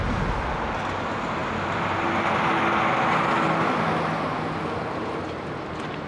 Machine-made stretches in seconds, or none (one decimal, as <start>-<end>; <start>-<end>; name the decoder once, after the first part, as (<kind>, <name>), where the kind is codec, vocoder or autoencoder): none